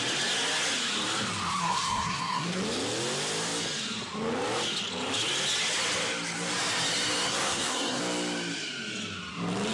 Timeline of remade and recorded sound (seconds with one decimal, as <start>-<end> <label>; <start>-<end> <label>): 0.0-1.6 recorded; 1.6-2.6 remade; 2.6-7.3 recorded; 7.3-8.0 remade; 8.0-9.7 recorded